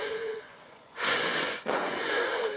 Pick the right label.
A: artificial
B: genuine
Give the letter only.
A